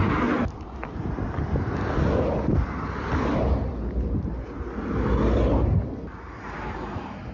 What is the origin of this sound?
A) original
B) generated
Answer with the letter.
A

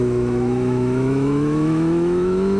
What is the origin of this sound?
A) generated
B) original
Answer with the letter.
A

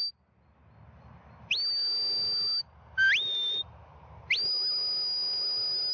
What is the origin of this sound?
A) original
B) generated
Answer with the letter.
A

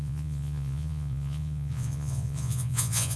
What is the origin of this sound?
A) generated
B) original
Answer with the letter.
A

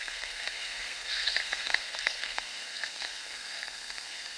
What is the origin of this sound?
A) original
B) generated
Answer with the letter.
B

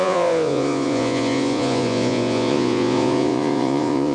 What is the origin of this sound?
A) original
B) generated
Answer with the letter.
B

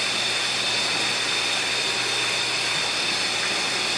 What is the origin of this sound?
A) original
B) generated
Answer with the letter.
A